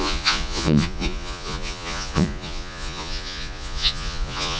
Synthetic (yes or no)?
yes